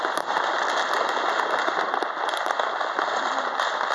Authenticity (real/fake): real